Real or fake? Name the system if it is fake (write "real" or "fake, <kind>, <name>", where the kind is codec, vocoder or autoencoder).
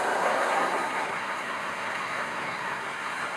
fake, codec, SNAC